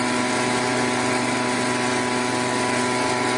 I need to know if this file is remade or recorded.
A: recorded